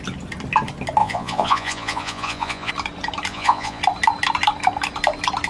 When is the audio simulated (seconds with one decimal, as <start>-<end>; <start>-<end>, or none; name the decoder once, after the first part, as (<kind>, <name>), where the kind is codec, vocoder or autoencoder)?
1.0-2.7 (vocoder, Vocos); 3.3-3.8